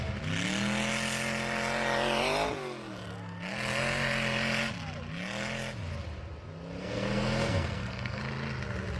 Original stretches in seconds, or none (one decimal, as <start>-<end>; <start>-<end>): 0.0-6.8; 8.2-9.0

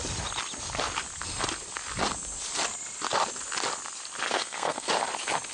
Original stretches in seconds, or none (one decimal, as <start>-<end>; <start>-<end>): 0.0-4.3; 4.9-5.5

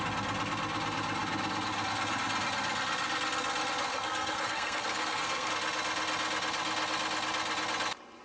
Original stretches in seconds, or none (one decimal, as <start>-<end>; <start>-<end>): 0.0-3.9; 5.5-8.2

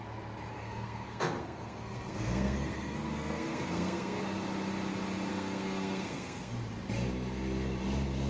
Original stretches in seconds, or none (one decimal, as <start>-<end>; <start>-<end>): 0.0-0.5; 4.2-5.3; 6.5-8.3

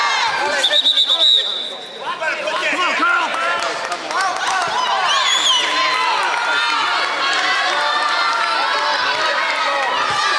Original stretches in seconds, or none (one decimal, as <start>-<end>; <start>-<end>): 0.0-10.4

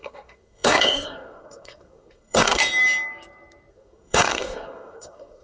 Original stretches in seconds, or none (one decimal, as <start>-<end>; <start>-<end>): 2.6-3.7